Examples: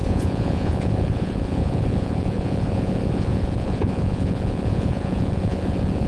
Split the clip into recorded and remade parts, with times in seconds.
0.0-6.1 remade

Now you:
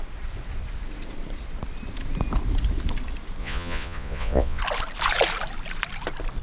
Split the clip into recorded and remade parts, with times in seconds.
0.0-3.4 recorded; 3.4-4.6 remade; 4.6-6.4 recorded

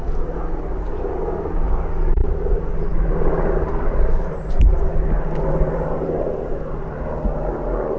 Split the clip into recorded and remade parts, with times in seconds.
0.0-2.2 recorded; 2.2-7.0 remade; 7.0-8.0 recorded

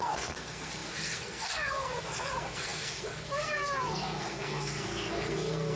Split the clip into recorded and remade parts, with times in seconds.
0.0-5.8 remade

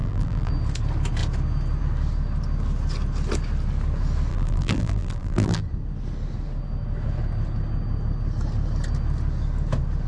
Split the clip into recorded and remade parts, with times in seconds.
0.0-0.5 remade; 0.5-4.3 recorded; 4.3-5.6 remade; 5.6-10.1 recorded

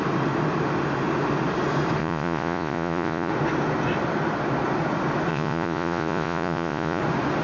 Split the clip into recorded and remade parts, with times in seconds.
0.0-2.0 recorded; 2.0-3.3 remade; 3.3-5.3 recorded; 5.3-7.0 remade; 7.0-7.4 recorded